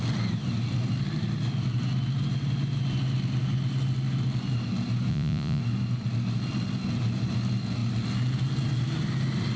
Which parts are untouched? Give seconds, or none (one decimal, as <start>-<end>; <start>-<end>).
0.0-5.1; 5.6-9.6